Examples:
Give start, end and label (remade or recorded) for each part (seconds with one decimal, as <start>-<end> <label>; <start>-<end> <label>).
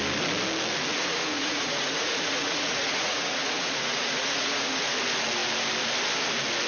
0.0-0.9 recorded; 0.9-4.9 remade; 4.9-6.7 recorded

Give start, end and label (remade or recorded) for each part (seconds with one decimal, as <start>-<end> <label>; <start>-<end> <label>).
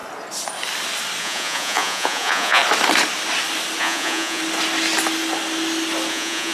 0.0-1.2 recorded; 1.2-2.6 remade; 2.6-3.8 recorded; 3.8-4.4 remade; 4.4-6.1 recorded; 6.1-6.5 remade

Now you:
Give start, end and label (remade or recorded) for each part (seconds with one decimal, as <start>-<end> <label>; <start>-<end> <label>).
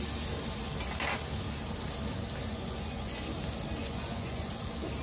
0.0-2.4 recorded; 2.4-3.2 remade; 3.2-3.8 recorded; 3.8-4.5 remade; 4.5-5.0 recorded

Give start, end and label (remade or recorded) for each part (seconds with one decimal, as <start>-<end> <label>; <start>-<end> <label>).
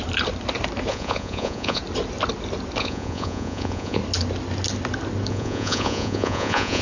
0.0-0.9 recorded; 0.9-1.8 remade; 1.8-2.8 recorded; 2.8-4.0 remade; 4.0-5.3 recorded; 5.3-6.8 remade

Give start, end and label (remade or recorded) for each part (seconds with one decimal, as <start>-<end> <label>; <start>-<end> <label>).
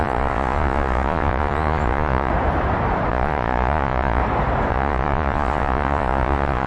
0.0-2.3 remade; 2.3-3.1 recorded; 3.1-4.2 remade; 4.2-4.7 recorded; 4.7-6.7 remade